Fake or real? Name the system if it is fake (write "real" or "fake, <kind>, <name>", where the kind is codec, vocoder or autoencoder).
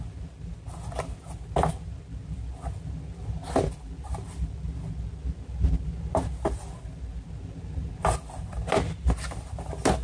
real